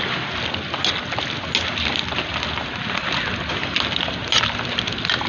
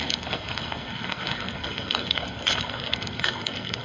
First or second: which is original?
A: first